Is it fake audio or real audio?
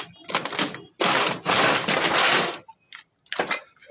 real